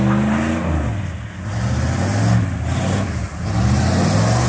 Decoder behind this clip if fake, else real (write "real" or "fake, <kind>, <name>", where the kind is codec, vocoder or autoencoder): real